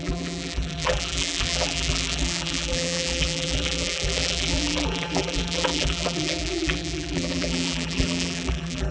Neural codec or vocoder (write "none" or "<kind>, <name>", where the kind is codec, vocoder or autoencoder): vocoder, BigVGAN v2